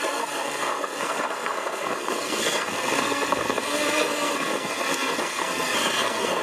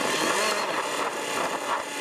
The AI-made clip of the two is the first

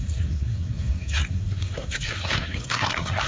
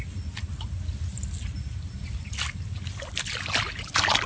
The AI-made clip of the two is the first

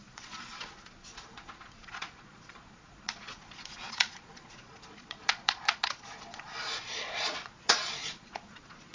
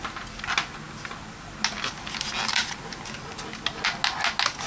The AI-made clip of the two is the first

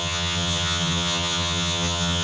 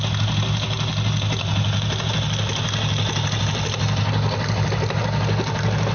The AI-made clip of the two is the first